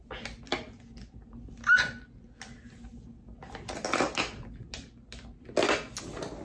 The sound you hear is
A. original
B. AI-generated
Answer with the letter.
A